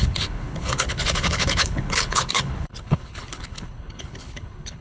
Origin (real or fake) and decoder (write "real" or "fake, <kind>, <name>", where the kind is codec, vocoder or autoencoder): fake, codec, HILCodec